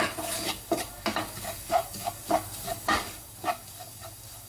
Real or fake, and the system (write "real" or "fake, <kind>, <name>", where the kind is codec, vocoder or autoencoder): fake, codec, DAC